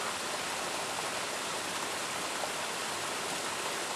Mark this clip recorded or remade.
recorded